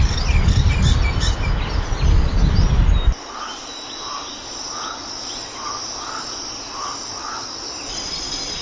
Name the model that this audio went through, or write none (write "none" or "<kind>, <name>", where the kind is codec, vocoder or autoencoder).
none